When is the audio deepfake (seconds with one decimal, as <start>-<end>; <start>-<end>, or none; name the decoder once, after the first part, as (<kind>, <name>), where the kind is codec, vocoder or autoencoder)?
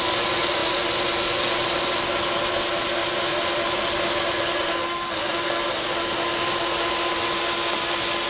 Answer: none